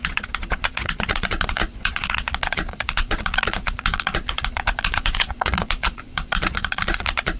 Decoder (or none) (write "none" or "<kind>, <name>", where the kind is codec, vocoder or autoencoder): vocoder, Vocos